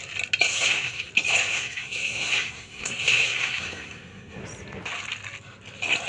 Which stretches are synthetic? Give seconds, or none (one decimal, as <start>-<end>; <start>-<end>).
0.5-1.1; 1.5-4.4